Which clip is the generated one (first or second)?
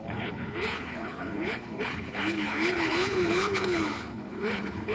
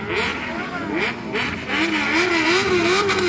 first